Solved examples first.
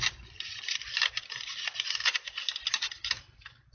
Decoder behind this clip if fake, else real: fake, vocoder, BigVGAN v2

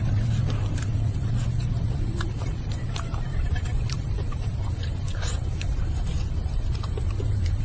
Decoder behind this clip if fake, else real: fake, vocoder, BigVGAN v2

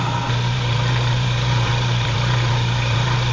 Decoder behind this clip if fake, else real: fake, vocoder, BigVGAN v2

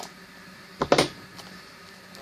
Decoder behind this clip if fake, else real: fake, vocoder, BigVGAN v2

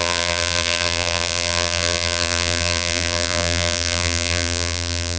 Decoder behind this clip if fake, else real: fake, vocoder, BigVGAN v2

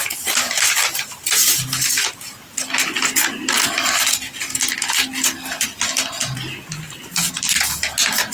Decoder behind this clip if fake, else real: real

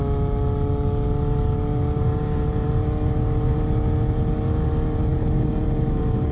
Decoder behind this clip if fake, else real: real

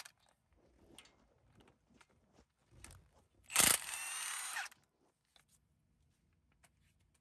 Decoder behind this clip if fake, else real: real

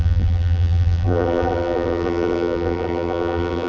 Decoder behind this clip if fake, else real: fake, vocoder, BigVGAN v2